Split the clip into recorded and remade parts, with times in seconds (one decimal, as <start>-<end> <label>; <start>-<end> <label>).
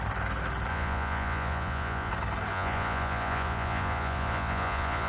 0.0-0.7 recorded; 0.7-2.1 remade; 2.1-2.5 recorded; 2.5-5.1 remade